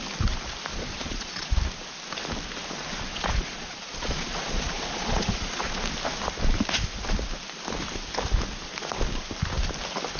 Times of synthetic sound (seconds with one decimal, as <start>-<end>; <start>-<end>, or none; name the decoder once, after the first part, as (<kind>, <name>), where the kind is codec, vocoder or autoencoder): 0.7-1.5 (vocoder, Vocos); 3.1-5.8